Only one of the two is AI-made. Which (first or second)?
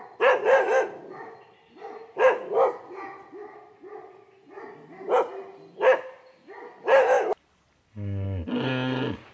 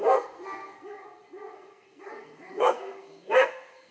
second